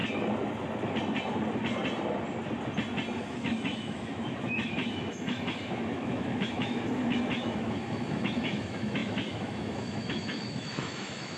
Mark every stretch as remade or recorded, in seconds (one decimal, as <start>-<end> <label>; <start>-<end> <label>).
0.0-3.3 recorded; 3.3-11.4 remade